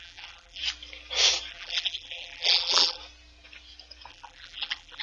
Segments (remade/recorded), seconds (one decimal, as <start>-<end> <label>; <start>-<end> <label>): 0.0-0.6 remade; 0.6-1.5 recorded; 1.5-3.0 remade; 3.0-4.1 recorded; 4.1-5.0 remade